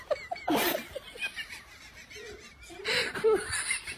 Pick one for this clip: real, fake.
real